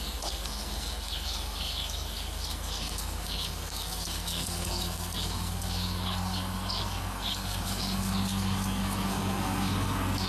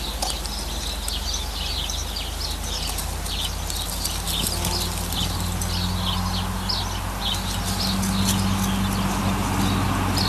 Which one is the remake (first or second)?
first